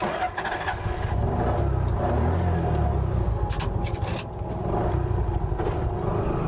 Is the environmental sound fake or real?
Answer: real